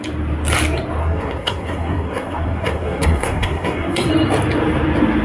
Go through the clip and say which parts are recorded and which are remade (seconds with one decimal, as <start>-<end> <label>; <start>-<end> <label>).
0.0-1.0 recorded; 1.0-4.1 remade; 4.1-5.2 recorded